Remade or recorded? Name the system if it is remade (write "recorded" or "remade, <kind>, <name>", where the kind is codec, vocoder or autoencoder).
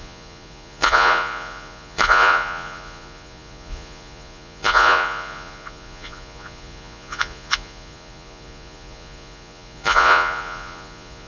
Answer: remade, vocoder, Vocos